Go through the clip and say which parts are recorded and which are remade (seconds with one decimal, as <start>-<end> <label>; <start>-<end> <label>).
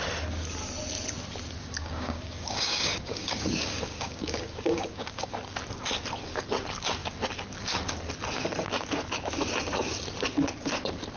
0.0-1.8 recorded; 1.8-5.3 remade; 5.3-11.2 recorded